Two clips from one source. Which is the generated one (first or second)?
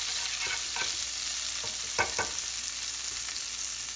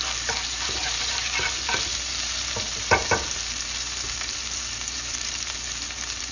second